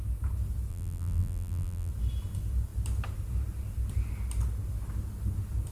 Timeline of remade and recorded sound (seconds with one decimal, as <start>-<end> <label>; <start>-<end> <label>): 0.0-0.7 recorded; 0.7-1.9 remade; 1.9-5.7 recorded